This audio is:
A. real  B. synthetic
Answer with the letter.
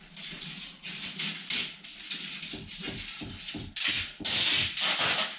A